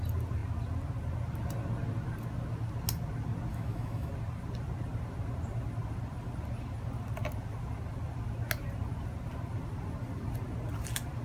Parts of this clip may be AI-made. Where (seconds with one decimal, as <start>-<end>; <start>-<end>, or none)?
3.5-4.1